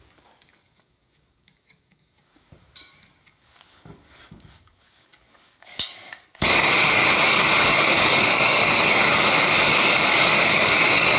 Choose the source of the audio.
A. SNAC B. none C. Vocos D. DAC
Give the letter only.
D